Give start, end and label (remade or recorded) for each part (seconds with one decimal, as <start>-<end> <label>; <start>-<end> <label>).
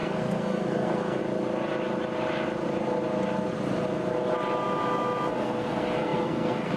0.0-1.2 remade; 1.2-5.3 recorded; 5.3-6.8 remade